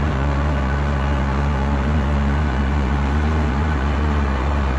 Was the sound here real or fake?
fake